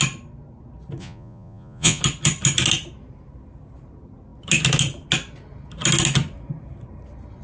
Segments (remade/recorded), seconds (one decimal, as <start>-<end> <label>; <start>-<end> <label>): 0.0-1.0 recorded; 1.0-2.0 remade; 2.0-7.4 recorded